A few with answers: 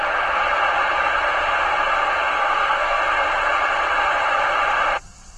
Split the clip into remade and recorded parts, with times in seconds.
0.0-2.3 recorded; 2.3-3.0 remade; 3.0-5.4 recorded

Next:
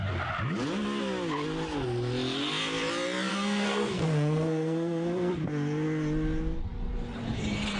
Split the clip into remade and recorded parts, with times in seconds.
0.0-3.3 recorded; 3.3-5.3 remade; 5.3-7.8 recorded